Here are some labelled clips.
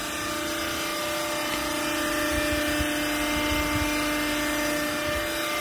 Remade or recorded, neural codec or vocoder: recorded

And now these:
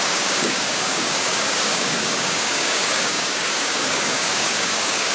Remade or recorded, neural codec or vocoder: remade, codec, DAC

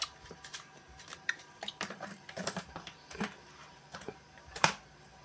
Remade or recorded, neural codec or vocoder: remade, vocoder, BigVGAN v2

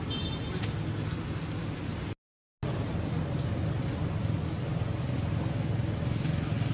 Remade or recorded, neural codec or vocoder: recorded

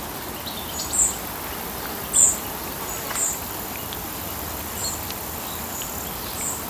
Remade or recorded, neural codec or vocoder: recorded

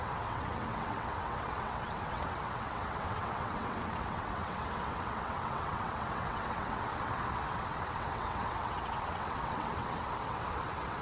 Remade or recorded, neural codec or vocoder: remade, vocoder, WaveNeXt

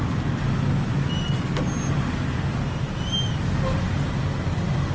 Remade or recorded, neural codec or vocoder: recorded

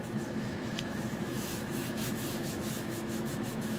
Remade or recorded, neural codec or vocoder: remade, autoencoder, DAC-VAE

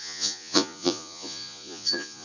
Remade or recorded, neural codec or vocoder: remade, vocoder, Vocos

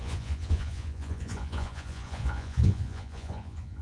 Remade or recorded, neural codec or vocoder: remade, vocoder, Vocos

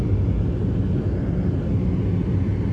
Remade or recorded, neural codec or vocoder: recorded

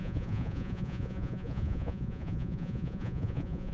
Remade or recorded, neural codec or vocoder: remade, vocoder, Vocos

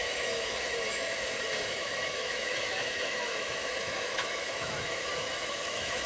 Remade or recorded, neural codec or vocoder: remade, autoencoder, DAC-VAE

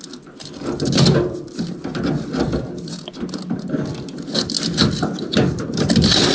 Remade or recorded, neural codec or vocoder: recorded